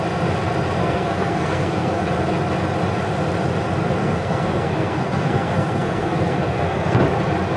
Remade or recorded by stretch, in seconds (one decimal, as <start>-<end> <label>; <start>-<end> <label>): 0.0-0.8 recorded; 0.8-2.0 remade; 2.0-4.0 recorded; 4.0-7.0 remade; 7.0-7.6 recorded